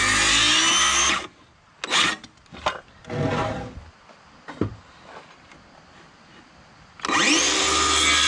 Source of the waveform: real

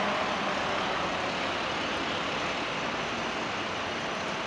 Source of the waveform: real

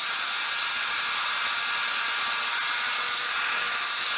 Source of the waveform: real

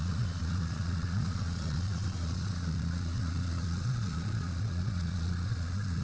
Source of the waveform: fake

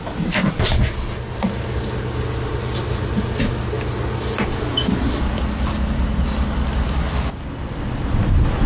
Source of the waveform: real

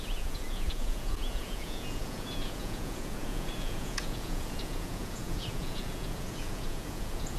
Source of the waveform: fake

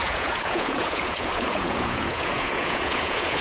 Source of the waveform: fake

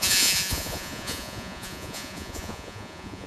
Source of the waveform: fake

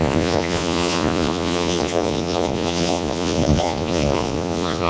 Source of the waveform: fake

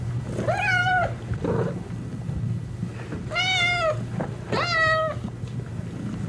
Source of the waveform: real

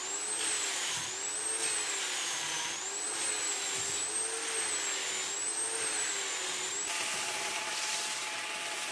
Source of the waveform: real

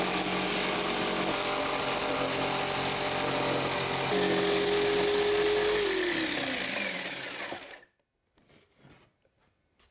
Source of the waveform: real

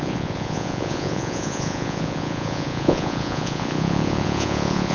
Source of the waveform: fake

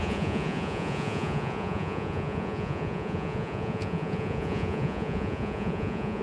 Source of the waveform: fake